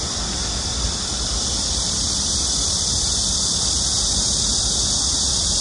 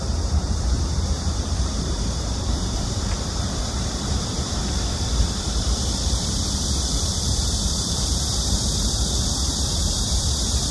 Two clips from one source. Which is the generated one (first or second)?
second